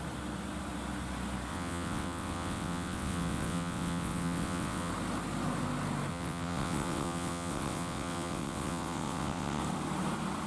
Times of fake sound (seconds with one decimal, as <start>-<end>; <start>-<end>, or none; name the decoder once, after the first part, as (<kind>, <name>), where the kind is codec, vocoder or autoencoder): 1.5-4.9 (vocoder, WaveNeXt); 6.1-9.6